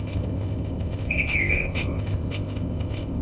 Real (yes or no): no